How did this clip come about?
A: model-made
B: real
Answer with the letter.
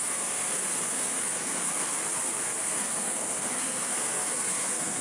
A